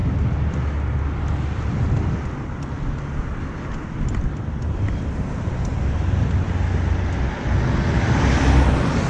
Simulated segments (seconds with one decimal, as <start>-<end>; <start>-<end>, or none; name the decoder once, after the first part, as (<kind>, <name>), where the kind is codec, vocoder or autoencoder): none